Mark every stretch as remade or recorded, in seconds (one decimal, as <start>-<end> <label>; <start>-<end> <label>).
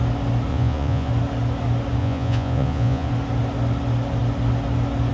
0.0-0.5 recorded; 0.5-1.1 remade; 1.1-2.0 recorded; 2.0-3.1 remade; 3.1-5.1 recorded